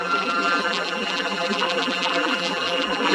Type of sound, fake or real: fake